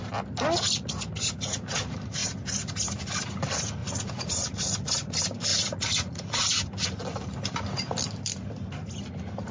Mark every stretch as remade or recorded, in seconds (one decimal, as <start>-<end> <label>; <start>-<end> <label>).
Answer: 0.0-3.8 recorded; 3.8-4.3 remade; 4.3-5.5 recorded; 5.5-6.4 remade; 6.4-9.5 recorded